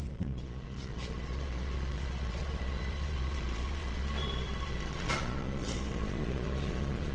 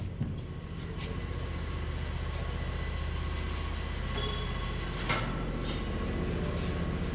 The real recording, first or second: second